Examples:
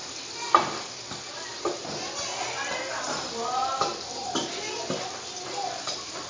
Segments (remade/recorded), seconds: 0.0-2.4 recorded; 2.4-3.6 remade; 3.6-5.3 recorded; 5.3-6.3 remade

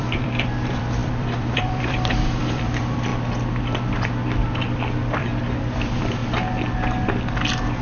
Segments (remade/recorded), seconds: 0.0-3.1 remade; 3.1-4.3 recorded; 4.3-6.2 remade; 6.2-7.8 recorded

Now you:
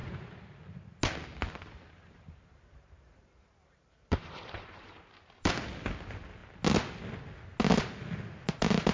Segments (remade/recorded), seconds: 0.0-0.6 remade; 0.6-1.7 recorded; 1.7-5.5 remade; 5.5-8.9 recorded

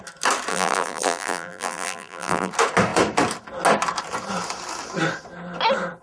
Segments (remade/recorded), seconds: 0.0-0.5 recorded; 0.5-2.5 remade; 2.5-6.0 recorded

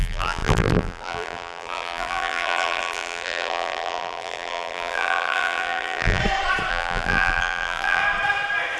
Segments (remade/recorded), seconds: 0.0-6.2 remade; 6.2-6.7 recorded; 6.7-8.0 remade; 8.0-8.8 recorded

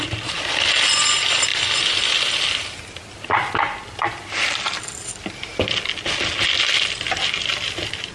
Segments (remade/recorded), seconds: 0.0-8.1 recorded